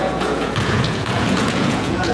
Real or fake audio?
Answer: fake